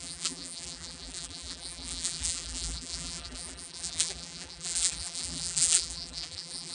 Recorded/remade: remade